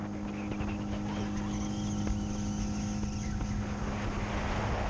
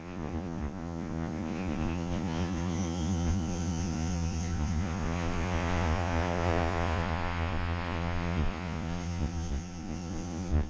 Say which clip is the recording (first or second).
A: first